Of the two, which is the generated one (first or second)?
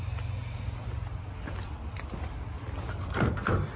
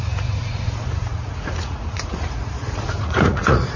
second